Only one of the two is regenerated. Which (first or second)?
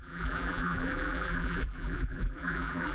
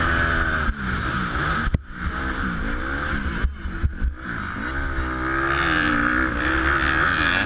first